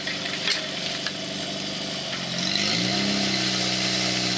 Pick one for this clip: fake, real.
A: real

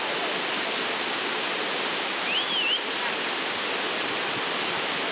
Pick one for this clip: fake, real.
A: real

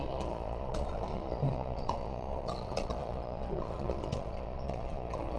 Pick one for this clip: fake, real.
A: fake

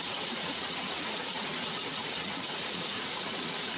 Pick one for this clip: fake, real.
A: fake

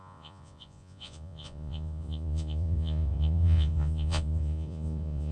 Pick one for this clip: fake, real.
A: fake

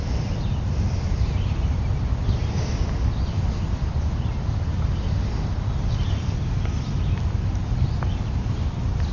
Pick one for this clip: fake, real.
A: real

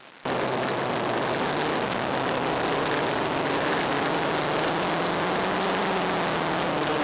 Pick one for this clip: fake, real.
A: real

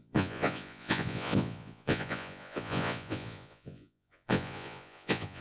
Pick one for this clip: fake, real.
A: fake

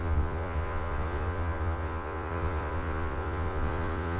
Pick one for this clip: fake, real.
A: fake